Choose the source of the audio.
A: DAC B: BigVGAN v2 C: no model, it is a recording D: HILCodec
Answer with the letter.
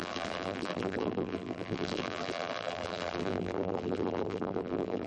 B